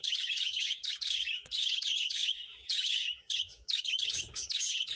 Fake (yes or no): yes